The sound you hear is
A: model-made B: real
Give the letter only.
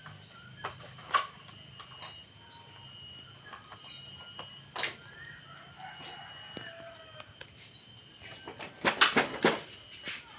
B